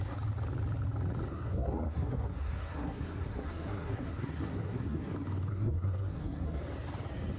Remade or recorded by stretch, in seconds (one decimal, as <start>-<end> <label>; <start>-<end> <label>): 0.0-1.3 recorded; 1.3-5.1 remade; 5.1-5.5 recorded; 5.5-6.6 remade; 6.6-7.4 recorded